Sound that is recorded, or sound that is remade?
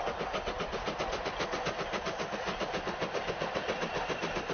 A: recorded